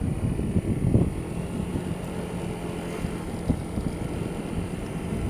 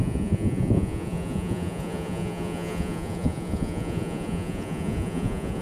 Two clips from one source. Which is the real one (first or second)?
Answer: first